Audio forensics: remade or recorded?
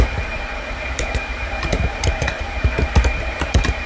remade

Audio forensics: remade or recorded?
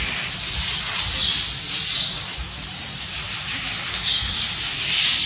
recorded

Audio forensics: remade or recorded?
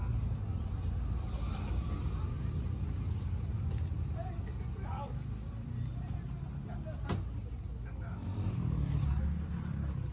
recorded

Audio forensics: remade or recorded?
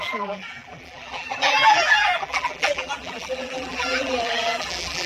remade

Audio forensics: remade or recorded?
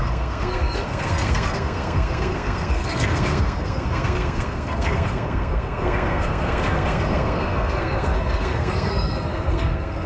remade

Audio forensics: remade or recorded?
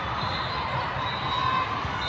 recorded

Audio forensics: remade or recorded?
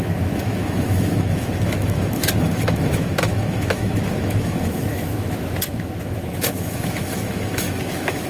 remade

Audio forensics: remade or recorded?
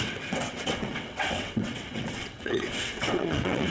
remade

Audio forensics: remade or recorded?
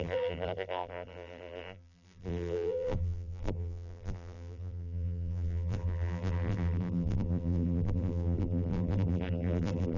remade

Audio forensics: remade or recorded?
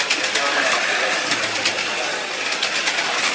recorded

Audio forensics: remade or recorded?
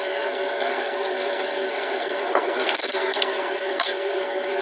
remade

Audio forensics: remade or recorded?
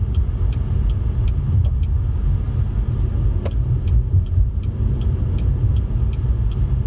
recorded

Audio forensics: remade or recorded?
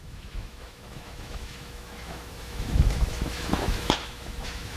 remade